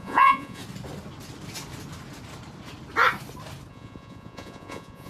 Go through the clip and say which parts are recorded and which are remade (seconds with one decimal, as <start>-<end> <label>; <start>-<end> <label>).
0.0-0.6 remade; 0.6-3.7 recorded; 3.7-5.1 remade